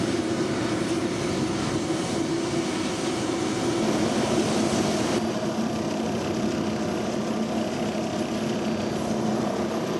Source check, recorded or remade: recorded